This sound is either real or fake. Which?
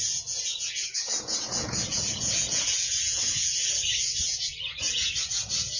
fake